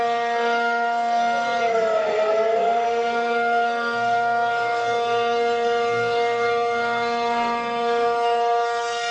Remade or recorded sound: remade